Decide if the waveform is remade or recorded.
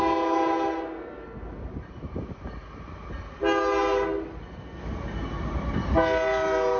recorded